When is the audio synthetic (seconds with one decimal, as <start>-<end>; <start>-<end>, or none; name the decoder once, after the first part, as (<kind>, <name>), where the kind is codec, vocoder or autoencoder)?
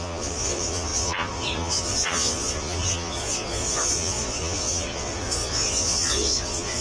0.0-6.8 (vocoder, Vocos)